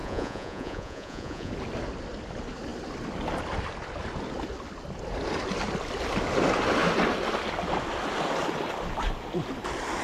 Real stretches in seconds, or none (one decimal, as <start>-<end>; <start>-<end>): 1.5-10.0